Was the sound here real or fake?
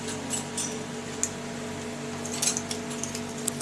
real